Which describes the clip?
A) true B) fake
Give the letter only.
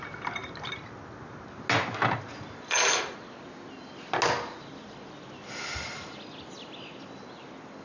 A